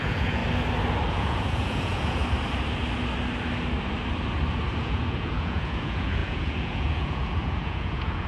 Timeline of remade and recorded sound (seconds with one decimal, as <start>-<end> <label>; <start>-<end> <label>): 0.0-0.4 remade; 0.4-1.1 recorded; 1.1-2.2 remade; 2.2-4.8 recorded; 4.8-8.3 remade